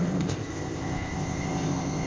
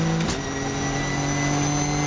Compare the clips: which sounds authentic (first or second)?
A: second